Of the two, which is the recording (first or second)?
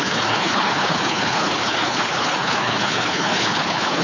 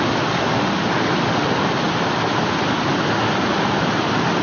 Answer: second